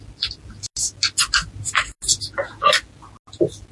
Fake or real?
real